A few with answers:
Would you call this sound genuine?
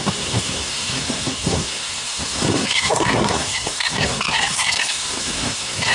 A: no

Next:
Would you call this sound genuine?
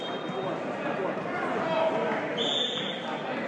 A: yes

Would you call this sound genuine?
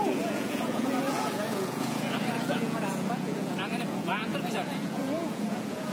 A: no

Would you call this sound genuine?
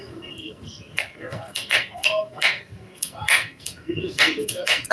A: no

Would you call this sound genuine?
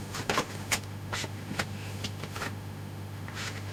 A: no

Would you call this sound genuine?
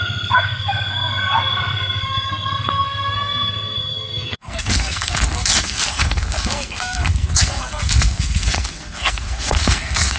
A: no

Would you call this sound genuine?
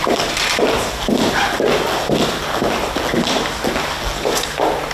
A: yes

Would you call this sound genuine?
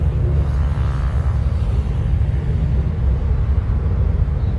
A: yes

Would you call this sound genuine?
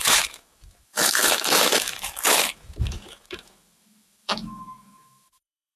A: no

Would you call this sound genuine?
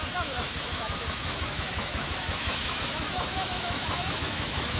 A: no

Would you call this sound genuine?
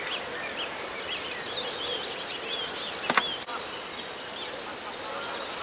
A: yes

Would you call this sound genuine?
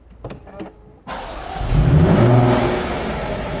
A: yes